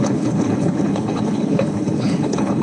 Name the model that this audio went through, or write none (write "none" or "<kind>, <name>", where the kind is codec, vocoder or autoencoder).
codec, HILCodec